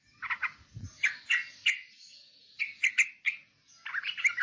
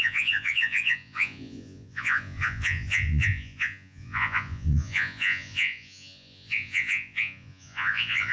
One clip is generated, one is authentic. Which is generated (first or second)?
second